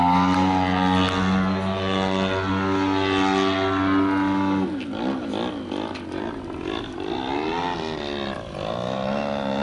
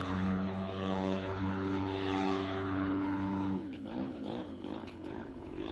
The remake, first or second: second